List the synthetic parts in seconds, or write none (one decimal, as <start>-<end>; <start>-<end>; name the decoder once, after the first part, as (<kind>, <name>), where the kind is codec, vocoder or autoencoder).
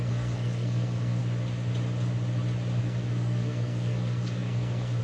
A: 0.0-1.2 (codec, SNAC); 2.8-5.0